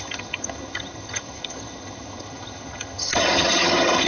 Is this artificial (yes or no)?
yes